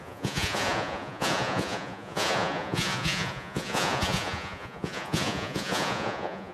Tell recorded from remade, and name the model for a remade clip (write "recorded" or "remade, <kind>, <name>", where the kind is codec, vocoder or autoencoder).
remade, vocoder, Vocos